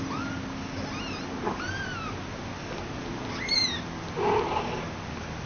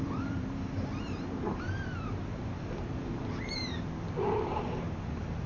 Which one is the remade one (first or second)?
second